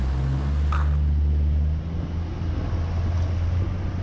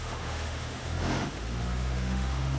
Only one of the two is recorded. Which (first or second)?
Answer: first